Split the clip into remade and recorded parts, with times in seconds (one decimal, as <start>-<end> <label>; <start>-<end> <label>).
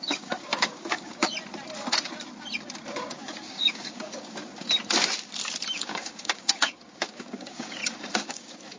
0.0-1.3 remade; 1.3-3.1 recorded; 3.1-4.4 remade; 4.4-5.8 recorded; 5.8-7.8 remade; 7.8-8.3 recorded; 8.3-8.8 remade